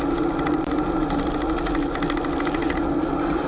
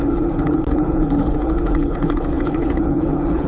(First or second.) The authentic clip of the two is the first